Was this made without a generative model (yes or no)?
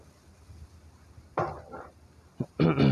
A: yes